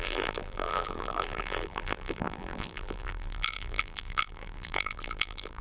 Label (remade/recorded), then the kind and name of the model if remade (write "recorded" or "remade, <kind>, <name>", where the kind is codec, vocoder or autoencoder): remade, vocoder, BigVGAN v2